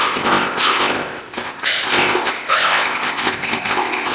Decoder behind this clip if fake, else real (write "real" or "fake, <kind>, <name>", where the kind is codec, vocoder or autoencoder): fake, codec, ZipCodec